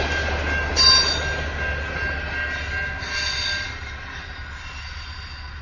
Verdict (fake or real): real